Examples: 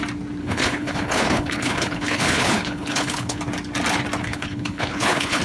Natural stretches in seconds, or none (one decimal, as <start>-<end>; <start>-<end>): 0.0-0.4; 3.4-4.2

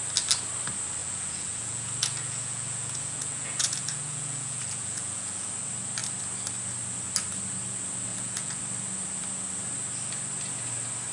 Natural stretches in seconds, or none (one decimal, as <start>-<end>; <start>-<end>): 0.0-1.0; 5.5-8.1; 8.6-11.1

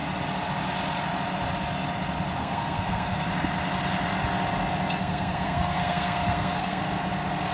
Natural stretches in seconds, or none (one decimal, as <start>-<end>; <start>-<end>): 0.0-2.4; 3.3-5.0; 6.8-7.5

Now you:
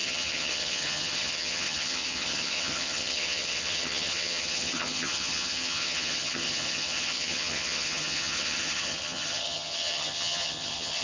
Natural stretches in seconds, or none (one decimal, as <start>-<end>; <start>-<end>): none

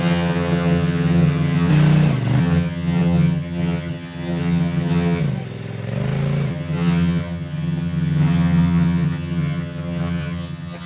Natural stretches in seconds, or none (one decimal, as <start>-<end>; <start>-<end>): 1.7-2.4; 5.2-6.5